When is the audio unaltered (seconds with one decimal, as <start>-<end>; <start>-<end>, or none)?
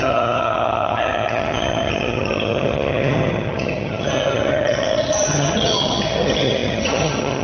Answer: none